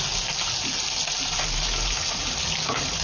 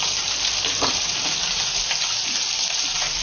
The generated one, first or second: second